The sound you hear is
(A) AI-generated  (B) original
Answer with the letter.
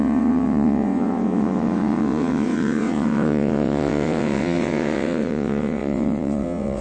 A